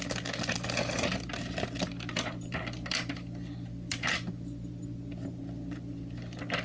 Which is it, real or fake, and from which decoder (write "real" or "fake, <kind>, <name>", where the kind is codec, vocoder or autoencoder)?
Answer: real